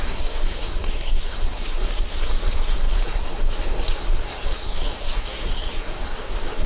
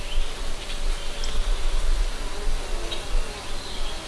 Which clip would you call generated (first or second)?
first